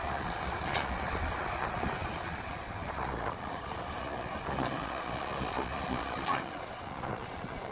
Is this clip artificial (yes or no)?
yes